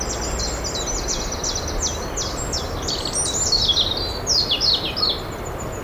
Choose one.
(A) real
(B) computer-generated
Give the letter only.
A